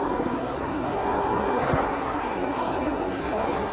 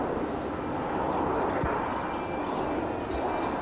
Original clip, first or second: second